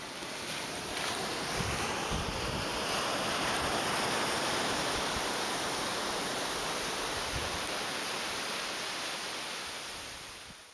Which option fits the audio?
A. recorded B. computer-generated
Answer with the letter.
A